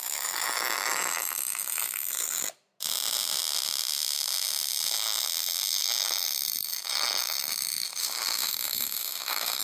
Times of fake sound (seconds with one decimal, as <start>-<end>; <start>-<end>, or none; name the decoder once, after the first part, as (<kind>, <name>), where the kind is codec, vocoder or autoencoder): 8.0-9.6 (autoencoder, DAC-VAE)